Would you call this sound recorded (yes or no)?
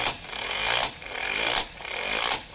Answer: yes